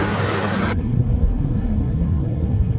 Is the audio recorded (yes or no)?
no